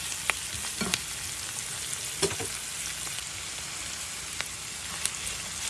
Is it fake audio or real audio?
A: real